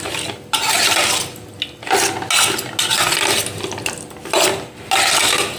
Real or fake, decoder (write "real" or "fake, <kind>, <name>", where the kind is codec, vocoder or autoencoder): real